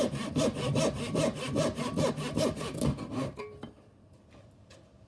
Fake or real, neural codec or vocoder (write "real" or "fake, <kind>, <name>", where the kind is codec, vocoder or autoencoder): real